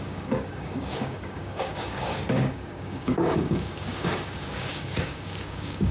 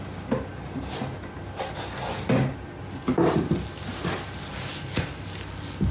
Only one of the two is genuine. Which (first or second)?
second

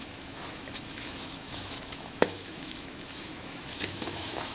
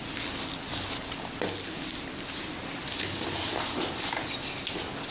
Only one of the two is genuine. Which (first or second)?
second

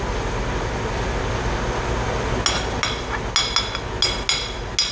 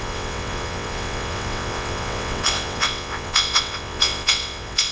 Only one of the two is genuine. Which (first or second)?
first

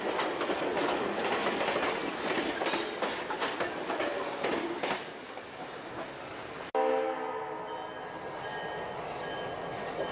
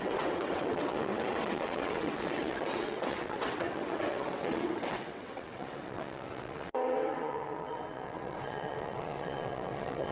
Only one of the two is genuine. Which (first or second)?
first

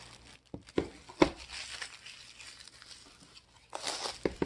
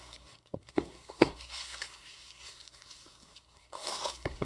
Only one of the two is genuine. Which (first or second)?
first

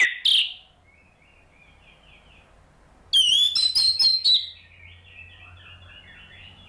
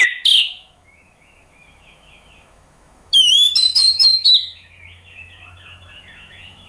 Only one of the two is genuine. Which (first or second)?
first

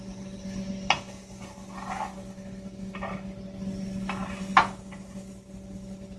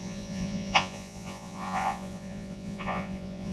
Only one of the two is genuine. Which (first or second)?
first